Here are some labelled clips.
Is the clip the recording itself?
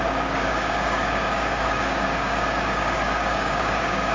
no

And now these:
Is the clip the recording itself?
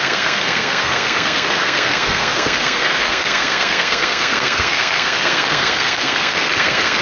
no